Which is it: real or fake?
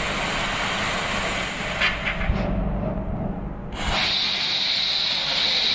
real